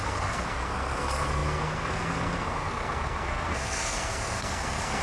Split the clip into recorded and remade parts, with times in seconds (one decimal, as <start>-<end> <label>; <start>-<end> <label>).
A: 0.0-5.0 remade